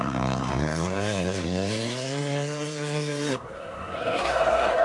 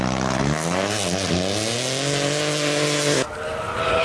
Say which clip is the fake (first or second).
first